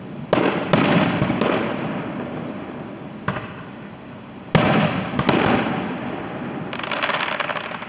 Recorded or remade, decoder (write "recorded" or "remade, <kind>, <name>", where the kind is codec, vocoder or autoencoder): recorded